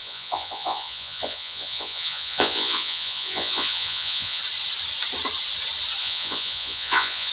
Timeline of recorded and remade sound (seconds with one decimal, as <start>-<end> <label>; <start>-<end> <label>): 0.0-4.4 remade; 4.4-6.0 recorded; 6.0-7.3 remade